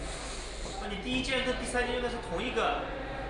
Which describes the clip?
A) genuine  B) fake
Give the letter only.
A